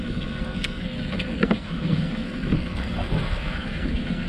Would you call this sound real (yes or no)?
no